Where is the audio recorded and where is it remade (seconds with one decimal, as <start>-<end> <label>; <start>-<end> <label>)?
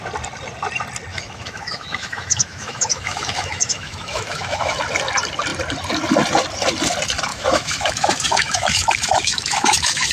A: 0.0-1.1 recorded; 1.1-4.8 remade; 4.8-7.3 recorded; 7.3-10.1 remade